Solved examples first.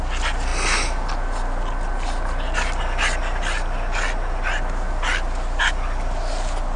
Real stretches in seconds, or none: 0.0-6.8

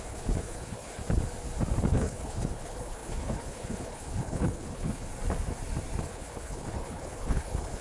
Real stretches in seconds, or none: 1.0-1.9; 5.1-6.0

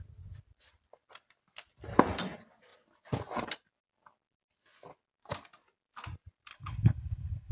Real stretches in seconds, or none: 0.0-6.5

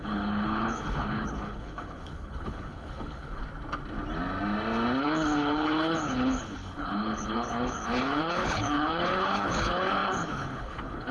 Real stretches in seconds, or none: 3.4-5.0

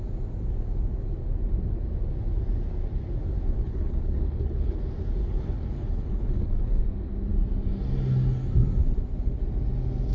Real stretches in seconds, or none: 0.0-3.4; 4.8-5.2; 6.8-8.8; 9.4-10.1

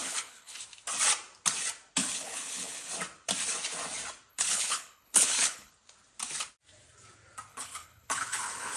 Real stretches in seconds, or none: 0.6-2.0; 2.9-4.3; 5.7-7.5

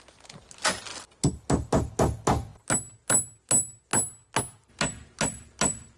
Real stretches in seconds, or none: 0.0-6.0